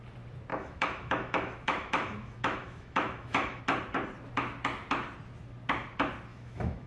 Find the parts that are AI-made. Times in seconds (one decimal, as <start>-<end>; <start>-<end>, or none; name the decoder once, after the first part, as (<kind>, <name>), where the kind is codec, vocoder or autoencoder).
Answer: 0.5-3.6 (autoencoder, DAC-VAE); 6.3-6.9